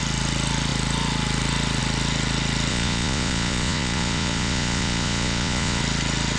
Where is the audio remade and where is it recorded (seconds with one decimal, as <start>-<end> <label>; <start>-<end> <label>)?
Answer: 0.0-2.7 recorded; 2.7-5.8 remade; 5.8-6.4 recorded